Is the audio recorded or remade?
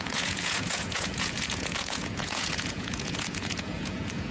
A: remade